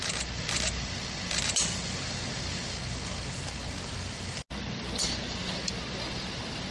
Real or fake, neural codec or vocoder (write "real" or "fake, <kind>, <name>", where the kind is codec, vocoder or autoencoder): real